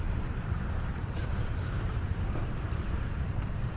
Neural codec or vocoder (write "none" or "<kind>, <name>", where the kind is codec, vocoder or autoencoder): vocoder, BigVGAN v2